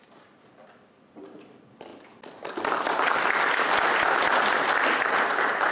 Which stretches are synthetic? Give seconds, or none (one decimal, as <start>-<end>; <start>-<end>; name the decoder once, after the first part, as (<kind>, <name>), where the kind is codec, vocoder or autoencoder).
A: 0.0-1.9 (vocoder, BigVGAN v2); 5.3-5.7